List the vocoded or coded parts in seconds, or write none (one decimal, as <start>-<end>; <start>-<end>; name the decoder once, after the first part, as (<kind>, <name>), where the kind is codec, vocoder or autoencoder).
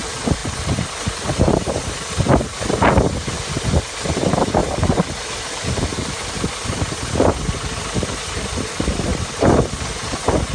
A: 4.6-5.1 (vocoder, BigVGAN v2); 9.1-9.9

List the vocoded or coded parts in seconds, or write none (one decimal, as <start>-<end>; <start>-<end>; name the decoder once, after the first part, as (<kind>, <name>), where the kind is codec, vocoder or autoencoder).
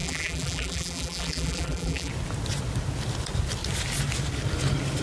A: 0.0-2.1 (vocoder, BigVGAN v2)